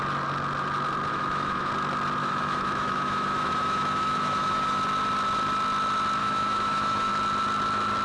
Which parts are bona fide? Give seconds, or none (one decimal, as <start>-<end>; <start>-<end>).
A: 0.0-1.1; 1.7-2.2; 4.8-6.2; 7.1-8.0